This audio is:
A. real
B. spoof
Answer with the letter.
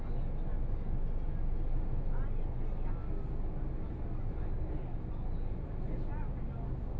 A